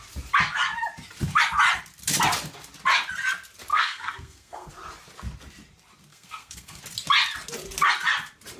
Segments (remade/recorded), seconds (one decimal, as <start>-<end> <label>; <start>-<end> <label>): 0.0-3.7 recorded; 3.7-4.7 remade; 4.7-6.1 recorded; 6.1-6.8 remade; 6.8-8.6 recorded